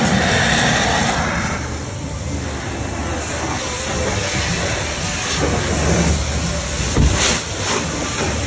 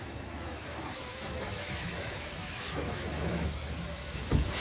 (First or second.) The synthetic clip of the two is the second